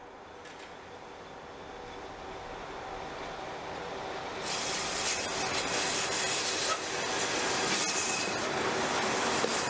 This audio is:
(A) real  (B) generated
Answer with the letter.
A